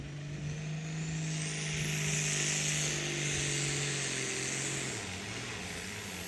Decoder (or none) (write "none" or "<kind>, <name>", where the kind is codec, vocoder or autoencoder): none